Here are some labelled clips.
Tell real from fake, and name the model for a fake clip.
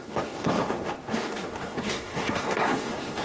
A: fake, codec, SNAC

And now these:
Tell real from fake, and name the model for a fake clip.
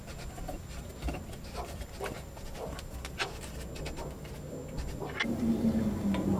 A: real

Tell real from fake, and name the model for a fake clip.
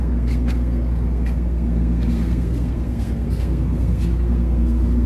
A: fake, codec, SNAC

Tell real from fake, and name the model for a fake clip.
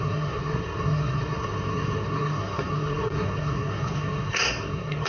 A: fake, codec, SNAC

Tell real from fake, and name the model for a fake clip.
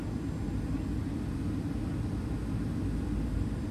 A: real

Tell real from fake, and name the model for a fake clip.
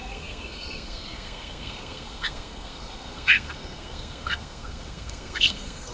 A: fake, codec, SNAC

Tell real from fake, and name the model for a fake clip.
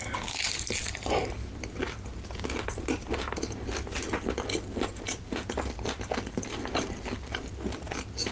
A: real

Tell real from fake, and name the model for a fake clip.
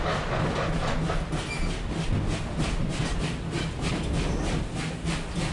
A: real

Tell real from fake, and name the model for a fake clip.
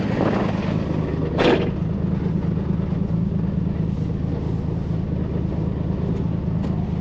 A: real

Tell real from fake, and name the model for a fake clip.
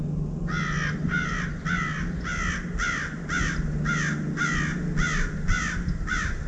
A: real